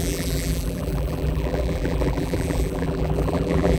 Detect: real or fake fake